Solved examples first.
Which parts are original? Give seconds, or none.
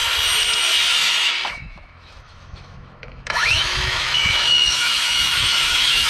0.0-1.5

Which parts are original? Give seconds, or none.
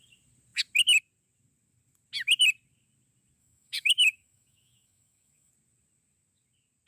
0.0-3.4; 5.5-6.9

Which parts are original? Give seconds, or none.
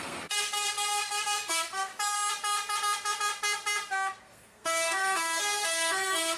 1.9-4.2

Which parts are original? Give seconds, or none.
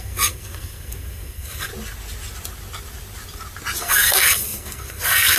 1.7-3.8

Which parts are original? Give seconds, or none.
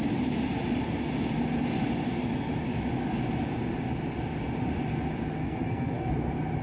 0.0-5.4; 6.1-6.6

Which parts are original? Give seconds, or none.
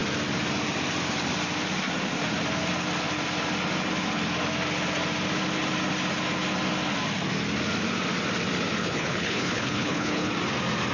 0.0-8.8; 10.3-10.9